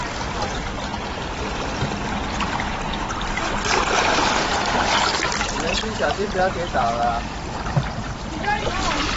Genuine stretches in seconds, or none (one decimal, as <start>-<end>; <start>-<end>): 0.0-0.9; 1.8-2.7; 3.4-4.5; 6.3-9.2